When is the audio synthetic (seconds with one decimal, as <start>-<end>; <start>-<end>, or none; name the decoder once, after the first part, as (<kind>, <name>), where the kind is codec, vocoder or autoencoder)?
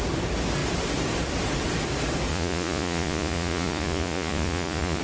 2.3-5.0 (vocoder, Vocos)